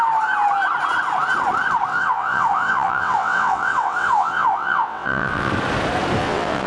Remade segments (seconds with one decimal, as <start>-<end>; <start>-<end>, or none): 1.9-5.5; 6.2-6.7